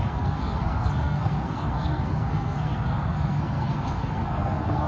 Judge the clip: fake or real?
fake